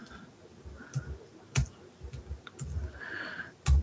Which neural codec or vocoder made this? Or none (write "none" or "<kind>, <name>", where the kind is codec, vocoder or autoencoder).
none